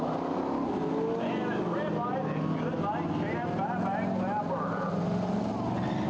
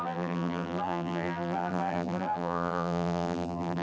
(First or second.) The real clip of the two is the first